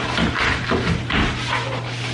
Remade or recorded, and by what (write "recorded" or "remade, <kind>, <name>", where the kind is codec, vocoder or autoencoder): recorded